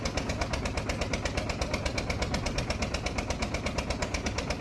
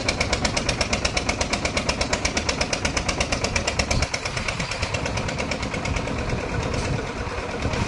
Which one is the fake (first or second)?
second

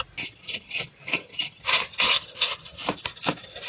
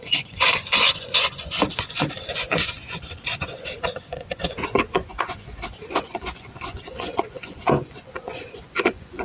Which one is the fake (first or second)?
second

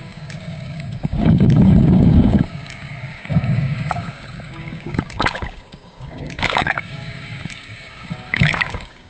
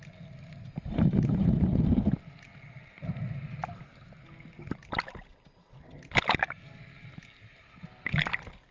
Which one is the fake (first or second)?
first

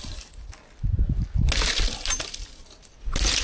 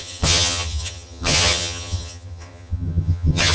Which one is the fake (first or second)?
second